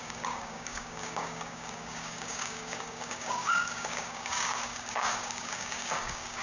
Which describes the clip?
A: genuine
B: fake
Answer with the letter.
B